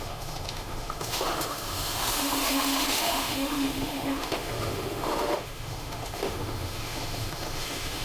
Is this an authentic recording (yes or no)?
no